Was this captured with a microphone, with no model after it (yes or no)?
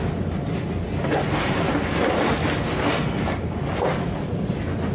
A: yes